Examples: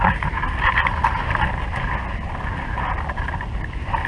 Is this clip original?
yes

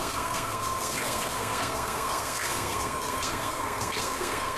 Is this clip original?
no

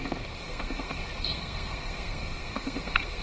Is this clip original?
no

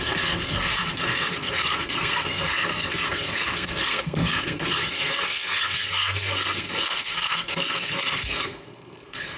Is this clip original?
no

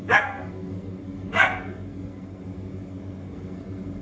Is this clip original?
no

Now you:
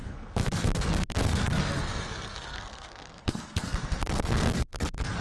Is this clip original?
no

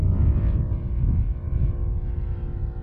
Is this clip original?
yes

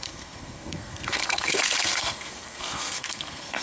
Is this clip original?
no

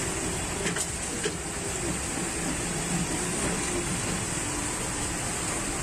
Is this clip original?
yes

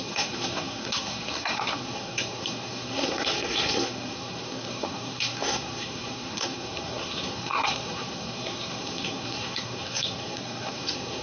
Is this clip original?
no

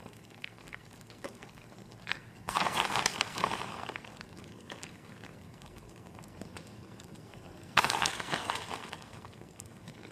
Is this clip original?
no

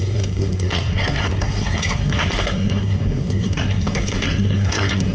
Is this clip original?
no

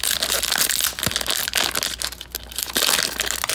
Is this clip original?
yes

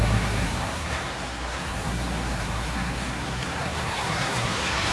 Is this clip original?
no